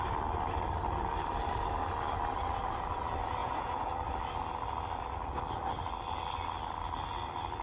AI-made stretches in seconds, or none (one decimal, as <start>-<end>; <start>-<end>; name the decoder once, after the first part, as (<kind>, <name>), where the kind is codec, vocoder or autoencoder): 3.4-3.9 (vocoder, Vocos)